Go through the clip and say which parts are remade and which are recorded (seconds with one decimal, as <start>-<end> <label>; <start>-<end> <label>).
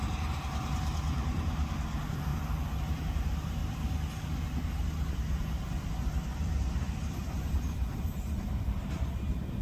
0.0-2.3 remade; 2.3-2.9 recorded; 2.9-3.6 remade; 3.6-6.5 recorded; 6.5-9.6 remade